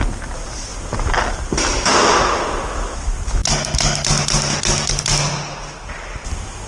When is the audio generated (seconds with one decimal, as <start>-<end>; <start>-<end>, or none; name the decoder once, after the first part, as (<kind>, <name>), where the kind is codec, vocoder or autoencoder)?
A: none